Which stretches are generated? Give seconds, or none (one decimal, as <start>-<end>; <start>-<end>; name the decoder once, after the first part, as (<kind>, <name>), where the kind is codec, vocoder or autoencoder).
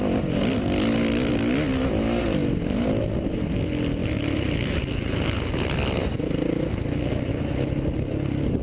none